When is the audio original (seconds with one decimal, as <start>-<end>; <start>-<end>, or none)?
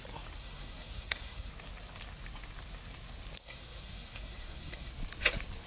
0.0-0.4; 1.5-3.4; 4.9-5.7